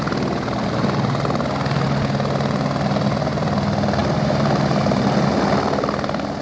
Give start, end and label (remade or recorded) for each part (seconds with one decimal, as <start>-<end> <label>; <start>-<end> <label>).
0.0-4.0 recorded; 4.0-5.3 remade; 5.3-6.4 recorded